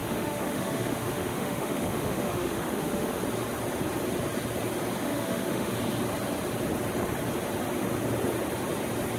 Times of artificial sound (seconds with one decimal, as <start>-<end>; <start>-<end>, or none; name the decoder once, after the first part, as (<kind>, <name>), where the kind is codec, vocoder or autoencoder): 0.0-3.2 (autoencoder, DAC-VAE); 5.1-5.7